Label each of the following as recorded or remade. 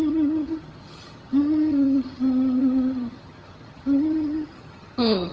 remade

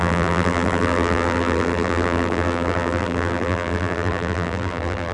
remade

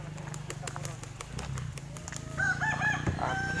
recorded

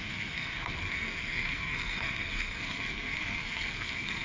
remade